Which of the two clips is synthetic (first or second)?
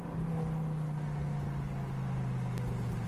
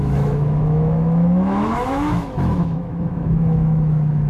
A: second